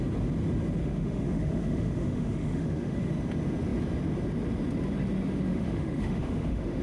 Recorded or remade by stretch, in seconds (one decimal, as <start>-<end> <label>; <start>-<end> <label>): 0.0-0.8 recorded; 0.8-3.1 remade; 3.1-5.5 recorded; 5.5-6.8 remade